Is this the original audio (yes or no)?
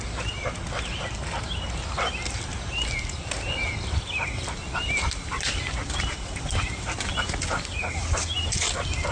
yes